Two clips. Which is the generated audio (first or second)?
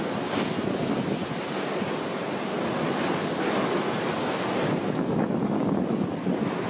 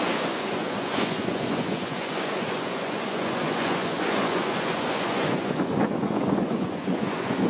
second